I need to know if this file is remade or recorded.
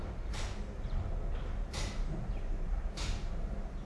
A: recorded